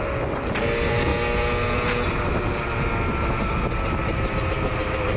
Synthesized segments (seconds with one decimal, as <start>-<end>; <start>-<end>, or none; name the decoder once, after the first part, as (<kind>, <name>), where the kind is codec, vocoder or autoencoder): none